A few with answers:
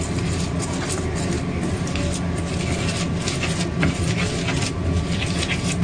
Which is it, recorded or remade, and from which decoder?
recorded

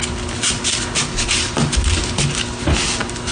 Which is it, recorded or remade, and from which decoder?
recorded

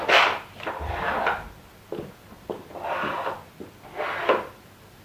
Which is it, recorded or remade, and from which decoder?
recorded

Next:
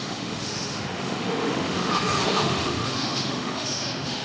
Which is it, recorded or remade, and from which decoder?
remade, autoencoder, DAC-VAE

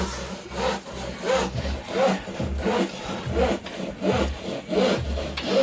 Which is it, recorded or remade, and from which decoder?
recorded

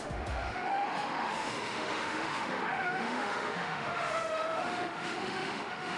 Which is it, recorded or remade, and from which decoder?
remade, autoencoder, DAC-VAE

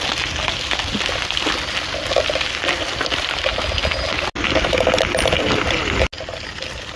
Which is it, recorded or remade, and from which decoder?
recorded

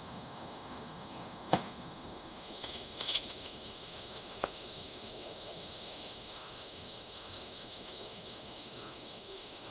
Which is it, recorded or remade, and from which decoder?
remade, autoencoder, DAC-VAE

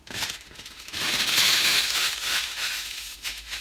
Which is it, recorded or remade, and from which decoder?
remade, autoencoder, DAC-VAE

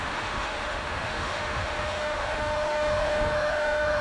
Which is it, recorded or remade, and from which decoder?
remade, autoencoder, DAC-VAE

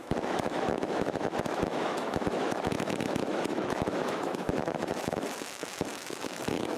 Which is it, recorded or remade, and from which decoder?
remade, autoencoder, DAC-VAE